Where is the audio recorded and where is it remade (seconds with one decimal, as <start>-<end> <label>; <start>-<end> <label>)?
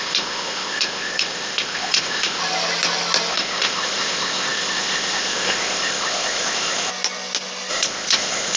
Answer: 0.0-2.4 remade; 2.4-3.3 recorded; 3.3-6.9 remade; 6.9-7.7 recorded; 7.7-8.6 remade